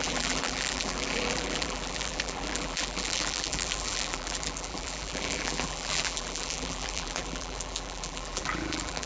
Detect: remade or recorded remade